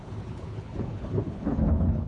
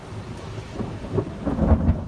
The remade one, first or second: first